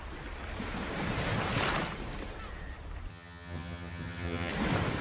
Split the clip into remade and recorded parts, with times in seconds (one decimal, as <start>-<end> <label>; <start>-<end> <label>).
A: 0.0-3.1 recorded; 3.1-4.5 remade; 4.5-5.0 recorded